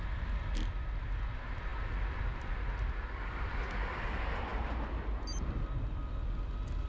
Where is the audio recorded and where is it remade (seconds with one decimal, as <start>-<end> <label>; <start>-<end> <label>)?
0.0-6.9 recorded